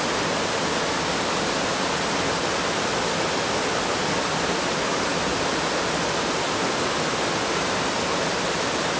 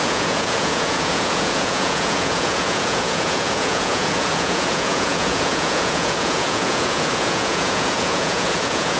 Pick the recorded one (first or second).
first